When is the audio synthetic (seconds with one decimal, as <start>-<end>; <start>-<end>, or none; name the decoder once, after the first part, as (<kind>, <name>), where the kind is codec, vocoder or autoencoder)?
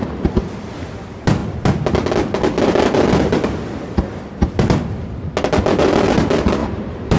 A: 6.6-7.2 (vocoder, BigVGAN v2)